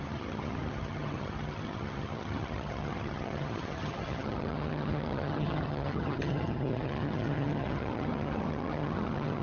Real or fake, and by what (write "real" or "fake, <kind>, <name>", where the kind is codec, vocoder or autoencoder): fake, vocoder, HiFi-GAN